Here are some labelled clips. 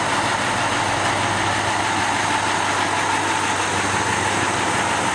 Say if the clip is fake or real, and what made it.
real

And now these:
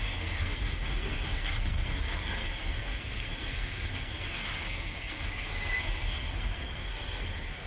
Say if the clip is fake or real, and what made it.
fake, codec, SNAC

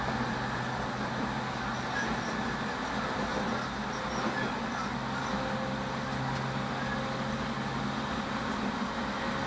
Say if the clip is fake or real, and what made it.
real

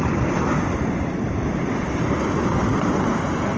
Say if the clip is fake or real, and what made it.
real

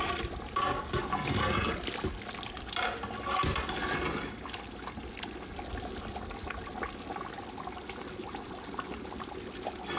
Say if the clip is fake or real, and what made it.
real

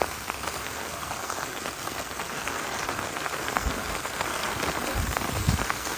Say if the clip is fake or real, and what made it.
fake, codec, SNAC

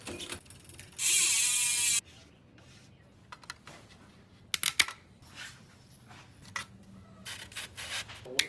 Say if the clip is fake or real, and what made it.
real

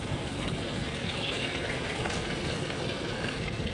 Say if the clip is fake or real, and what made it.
fake, codec, SNAC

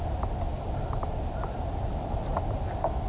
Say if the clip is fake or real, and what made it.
real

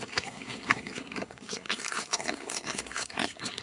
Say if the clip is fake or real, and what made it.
fake, codec, SNAC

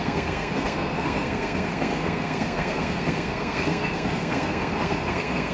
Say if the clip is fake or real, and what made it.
fake, codec, SNAC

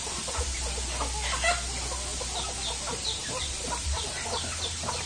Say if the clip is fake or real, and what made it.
real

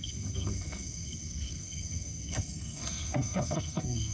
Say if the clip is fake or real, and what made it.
fake, codec, SNAC